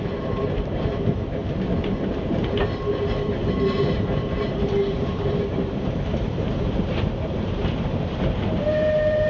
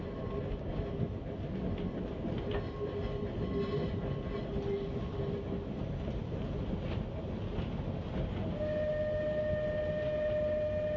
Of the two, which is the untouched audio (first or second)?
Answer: second